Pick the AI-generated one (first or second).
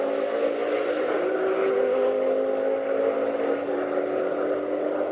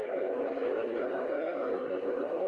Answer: second